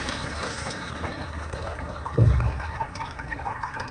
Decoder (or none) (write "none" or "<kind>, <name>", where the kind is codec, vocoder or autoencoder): codec, SNAC